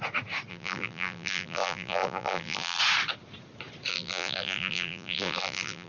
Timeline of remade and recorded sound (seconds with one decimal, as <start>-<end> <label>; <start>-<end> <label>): 0.0-0.5 recorded; 0.5-2.8 remade; 2.8-3.9 recorded; 3.9-5.9 remade